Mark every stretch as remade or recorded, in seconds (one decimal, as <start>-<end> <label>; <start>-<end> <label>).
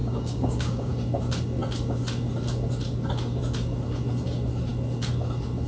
0.0-0.9 remade; 0.9-5.7 recorded